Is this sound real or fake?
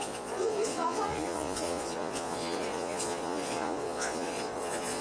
fake